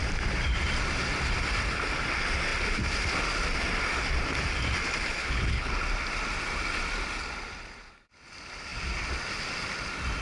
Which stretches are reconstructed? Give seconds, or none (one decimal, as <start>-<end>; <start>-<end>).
5.2-5.8